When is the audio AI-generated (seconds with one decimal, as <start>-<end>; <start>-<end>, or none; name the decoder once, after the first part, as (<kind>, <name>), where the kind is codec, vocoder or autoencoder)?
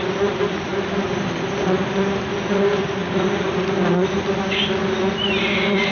none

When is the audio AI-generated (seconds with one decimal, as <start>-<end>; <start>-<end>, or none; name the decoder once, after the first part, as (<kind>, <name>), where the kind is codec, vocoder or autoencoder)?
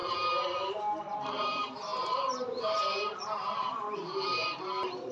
0.7-5.1 (vocoder, BigVGAN v2)